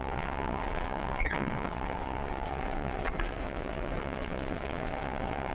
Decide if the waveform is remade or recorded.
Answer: remade